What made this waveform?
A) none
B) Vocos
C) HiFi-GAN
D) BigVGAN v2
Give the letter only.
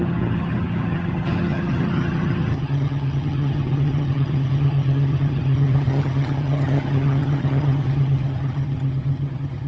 C